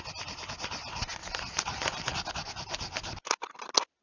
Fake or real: real